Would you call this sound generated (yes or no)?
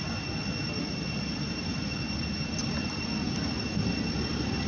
no